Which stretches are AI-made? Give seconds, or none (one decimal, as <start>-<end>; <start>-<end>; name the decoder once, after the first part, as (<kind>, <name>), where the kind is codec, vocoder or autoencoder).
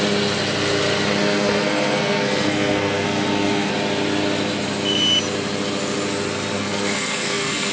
1.2-3.7 (codec, SNAC); 6.5-7.7